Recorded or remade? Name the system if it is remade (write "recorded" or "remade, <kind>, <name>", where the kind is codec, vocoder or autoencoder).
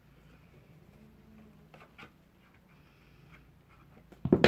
recorded